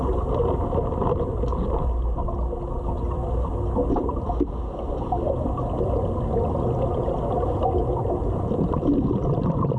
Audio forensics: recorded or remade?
recorded